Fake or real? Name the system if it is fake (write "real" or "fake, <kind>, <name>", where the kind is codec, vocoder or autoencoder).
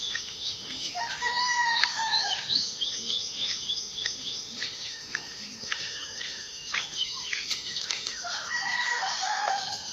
fake, autoencoder, DAC-VAE